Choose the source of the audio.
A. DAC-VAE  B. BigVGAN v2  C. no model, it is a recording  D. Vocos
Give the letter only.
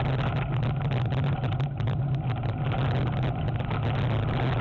C